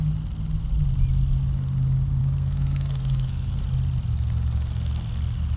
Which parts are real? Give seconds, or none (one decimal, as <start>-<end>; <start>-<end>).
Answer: 0.0-2.2; 3.6-5.6